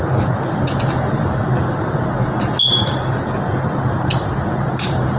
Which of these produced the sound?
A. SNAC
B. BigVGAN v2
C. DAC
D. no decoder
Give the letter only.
D